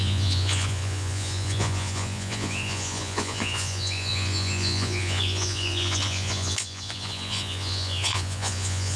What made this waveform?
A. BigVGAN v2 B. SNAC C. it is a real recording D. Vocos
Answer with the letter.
D